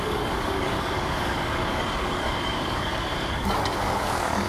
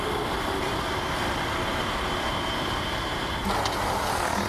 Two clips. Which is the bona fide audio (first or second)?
second